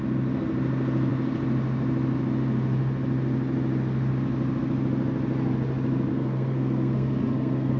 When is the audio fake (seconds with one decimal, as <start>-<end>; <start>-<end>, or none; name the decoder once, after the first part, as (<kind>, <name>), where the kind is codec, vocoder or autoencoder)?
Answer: 6.1-7.8 (codec, SNAC)